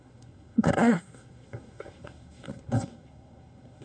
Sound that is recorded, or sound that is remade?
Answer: remade